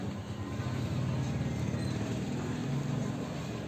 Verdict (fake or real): real